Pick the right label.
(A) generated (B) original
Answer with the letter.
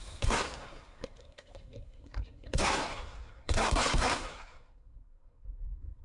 A